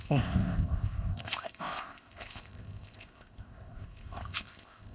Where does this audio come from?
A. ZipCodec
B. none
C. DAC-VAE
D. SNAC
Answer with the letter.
A